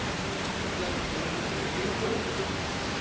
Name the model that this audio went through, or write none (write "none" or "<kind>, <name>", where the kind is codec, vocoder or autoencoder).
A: vocoder, BigVGAN v2